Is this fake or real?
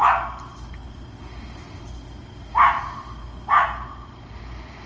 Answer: real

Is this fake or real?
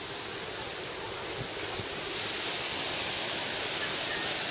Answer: real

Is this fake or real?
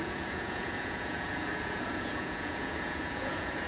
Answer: fake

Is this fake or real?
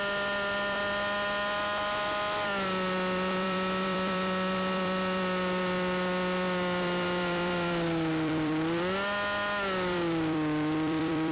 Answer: fake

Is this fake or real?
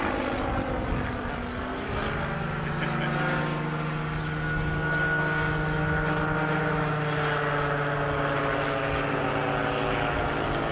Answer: real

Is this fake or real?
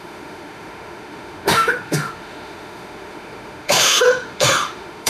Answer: fake